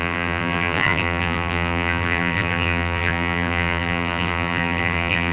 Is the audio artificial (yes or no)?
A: yes